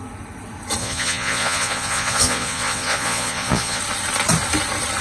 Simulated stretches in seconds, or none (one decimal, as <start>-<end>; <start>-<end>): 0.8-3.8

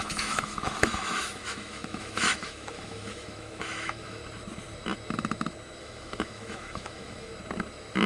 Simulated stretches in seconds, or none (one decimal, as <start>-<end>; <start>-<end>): 0.0-4.2; 5.8-7.3

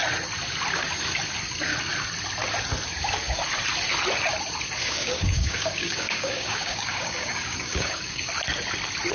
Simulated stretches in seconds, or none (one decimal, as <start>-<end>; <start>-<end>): 4.8-8.3